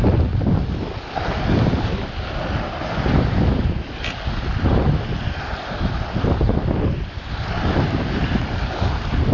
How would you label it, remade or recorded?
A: recorded